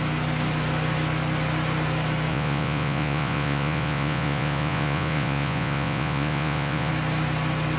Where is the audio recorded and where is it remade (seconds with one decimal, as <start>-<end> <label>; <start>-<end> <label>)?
0.0-2.3 recorded; 2.3-6.9 remade; 6.9-7.8 recorded

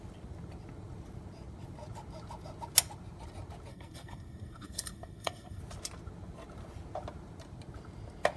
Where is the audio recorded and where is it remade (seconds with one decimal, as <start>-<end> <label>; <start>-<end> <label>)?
0.0-3.7 recorded; 3.7-5.6 remade; 5.6-8.4 recorded

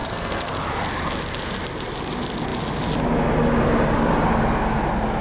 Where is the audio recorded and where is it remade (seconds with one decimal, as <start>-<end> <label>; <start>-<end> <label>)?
0.0-0.5 remade; 0.5-5.2 recorded